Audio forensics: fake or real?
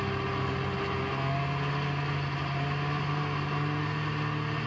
real